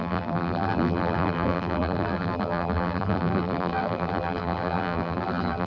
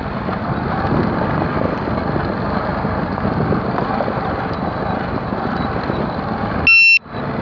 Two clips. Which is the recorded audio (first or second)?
second